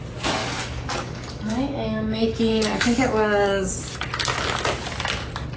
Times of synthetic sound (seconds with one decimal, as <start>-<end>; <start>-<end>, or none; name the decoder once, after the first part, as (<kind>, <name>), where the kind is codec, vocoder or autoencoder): 0.4-3.8 (codec, DAC)